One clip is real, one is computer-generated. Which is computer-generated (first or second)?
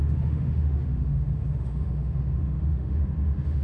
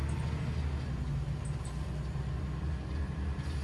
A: first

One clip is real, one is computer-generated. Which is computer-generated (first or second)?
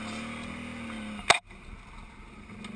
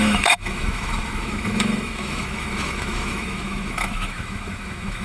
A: second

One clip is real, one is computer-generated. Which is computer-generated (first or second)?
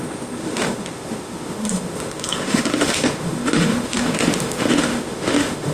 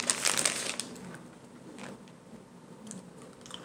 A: first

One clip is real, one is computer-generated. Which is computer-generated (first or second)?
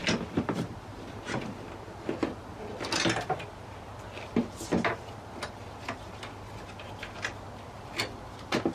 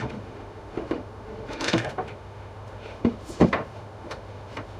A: second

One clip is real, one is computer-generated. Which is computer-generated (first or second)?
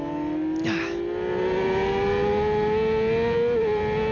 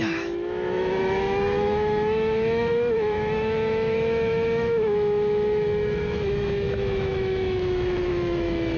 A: second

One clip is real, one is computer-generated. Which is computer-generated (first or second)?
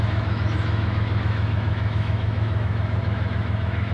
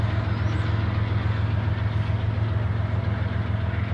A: first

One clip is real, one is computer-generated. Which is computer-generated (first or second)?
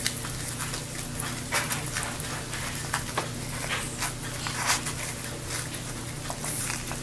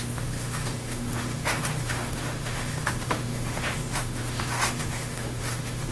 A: second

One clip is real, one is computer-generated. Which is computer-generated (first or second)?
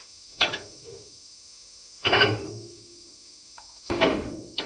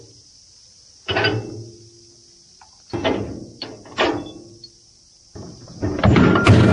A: first